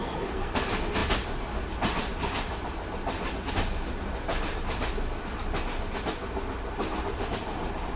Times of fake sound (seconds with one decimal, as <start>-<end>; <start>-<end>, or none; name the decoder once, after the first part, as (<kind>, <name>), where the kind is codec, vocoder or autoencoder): 0.0-0.6 (codec, SNAC)